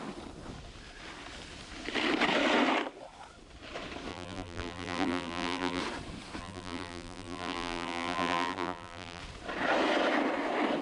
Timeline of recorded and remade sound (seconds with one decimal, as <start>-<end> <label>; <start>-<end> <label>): 0.0-4.1 recorded; 4.1-5.8 remade; 5.8-6.4 recorded; 6.4-9.2 remade; 9.2-10.8 recorded